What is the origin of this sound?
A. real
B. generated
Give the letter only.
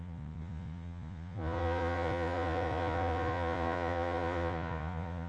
B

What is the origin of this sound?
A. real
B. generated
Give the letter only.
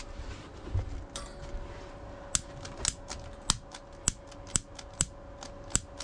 A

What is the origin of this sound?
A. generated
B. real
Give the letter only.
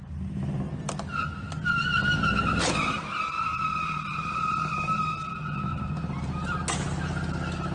B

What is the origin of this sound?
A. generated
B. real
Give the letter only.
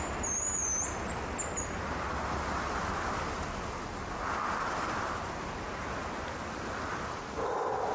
B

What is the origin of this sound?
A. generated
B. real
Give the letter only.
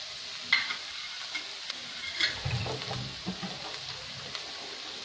B